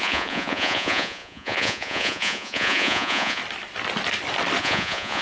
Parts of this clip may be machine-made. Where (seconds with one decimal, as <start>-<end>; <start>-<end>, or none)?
0.0-3.4; 4.6-5.2